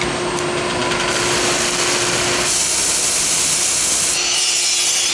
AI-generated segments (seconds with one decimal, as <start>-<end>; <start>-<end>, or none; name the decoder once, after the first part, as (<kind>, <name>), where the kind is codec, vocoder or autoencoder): none